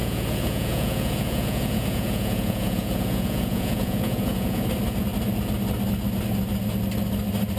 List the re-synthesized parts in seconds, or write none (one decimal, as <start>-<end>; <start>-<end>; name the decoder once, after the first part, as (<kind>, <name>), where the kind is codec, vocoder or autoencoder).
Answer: 0.0-4.6 (vocoder, Vocos)